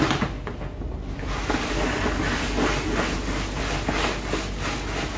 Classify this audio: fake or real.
real